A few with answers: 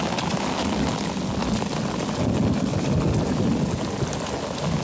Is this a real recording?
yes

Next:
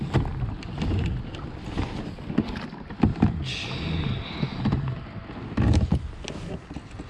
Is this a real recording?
yes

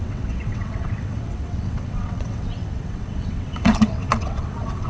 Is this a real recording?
no